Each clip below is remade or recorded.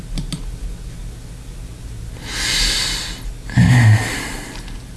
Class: recorded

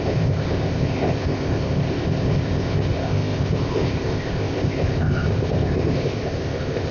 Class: remade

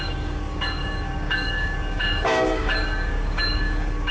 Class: remade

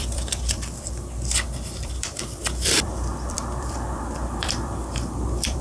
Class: remade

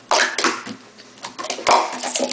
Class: recorded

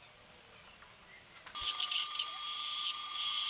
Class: recorded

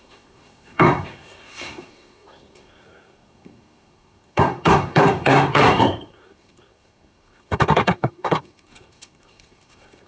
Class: remade